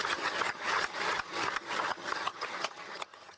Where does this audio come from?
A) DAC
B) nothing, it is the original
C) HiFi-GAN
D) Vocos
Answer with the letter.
C